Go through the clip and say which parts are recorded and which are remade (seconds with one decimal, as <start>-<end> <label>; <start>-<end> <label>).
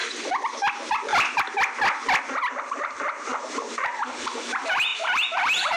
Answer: 0.0-0.7 recorded; 0.7-1.1 remade; 1.1-2.5 recorded; 2.5-5.8 remade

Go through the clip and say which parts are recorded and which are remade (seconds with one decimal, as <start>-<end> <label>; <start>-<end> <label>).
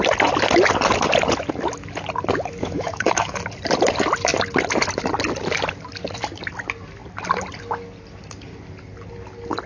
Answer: 0.0-2.6 recorded; 2.6-3.4 remade; 3.4-9.7 recorded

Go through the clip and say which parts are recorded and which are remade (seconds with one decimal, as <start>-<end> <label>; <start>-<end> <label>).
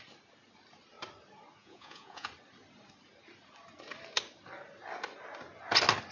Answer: 0.0-1.6 recorded; 1.6-2.3 remade; 2.3-6.1 recorded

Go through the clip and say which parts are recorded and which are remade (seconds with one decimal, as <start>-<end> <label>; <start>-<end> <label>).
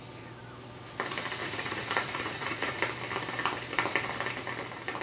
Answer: 0.0-1.4 recorded; 1.4-2.8 remade; 2.8-5.0 recorded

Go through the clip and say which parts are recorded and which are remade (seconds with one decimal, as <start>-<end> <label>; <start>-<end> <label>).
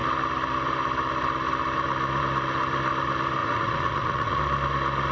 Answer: 0.0-3.4 recorded; 3.4-4.4 remade; 4.4-5.1 recorded